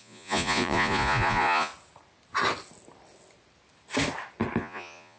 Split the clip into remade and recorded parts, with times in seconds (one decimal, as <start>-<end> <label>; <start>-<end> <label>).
0.0-1.7 remade; 1.7-4.6 recorded; 4.6-5.2 remade